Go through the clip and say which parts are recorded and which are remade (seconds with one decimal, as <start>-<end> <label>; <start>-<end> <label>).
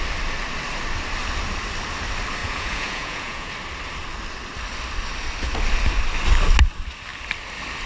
0.0-2.4 recorded; 2.4-3.5 remade; 3.5-7.9 recorded